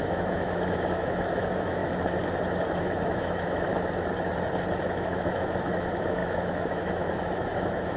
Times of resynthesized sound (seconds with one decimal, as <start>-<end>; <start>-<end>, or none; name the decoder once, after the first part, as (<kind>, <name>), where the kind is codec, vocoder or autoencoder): 0.0-1.8 (autoencoder, DAC-VAE); 2.8-3.7; 4.9-8.0